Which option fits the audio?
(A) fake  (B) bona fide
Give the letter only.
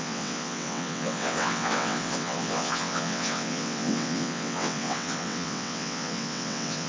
A